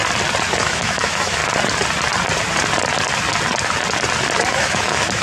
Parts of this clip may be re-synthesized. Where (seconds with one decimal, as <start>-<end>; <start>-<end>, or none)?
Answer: 0.6-1.4; 4.5-5.2